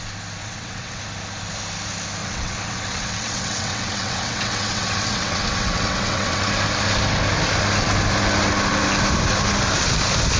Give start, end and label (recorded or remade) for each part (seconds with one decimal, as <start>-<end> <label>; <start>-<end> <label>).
0.0-0.4 recorded; 0.4-1.0 remade; 1.0-2.2 recorded; 2.2-6.5 remade; 6.5-10.4 recorded